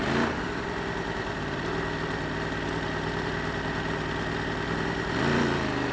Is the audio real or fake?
fake